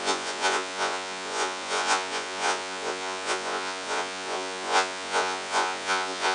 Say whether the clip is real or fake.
fake